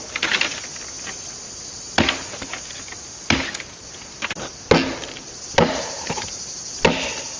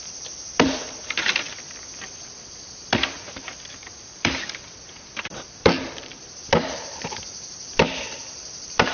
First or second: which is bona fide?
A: first